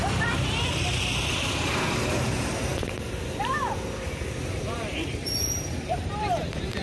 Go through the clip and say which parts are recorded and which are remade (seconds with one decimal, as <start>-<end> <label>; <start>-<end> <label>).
0.0-1.2 recorded; 1.2-6.8 remade